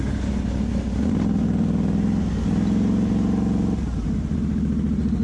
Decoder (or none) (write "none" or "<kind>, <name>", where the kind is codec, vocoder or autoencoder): none